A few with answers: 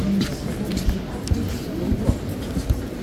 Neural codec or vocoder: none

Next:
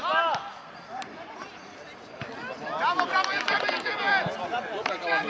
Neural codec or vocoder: none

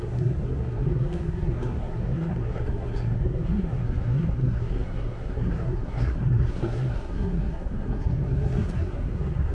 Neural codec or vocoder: codec, SNAC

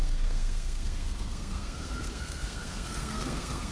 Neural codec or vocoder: codec, SNAC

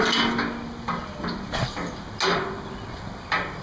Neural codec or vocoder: none